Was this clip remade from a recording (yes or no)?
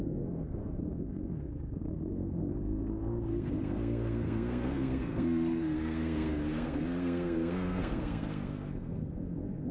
yes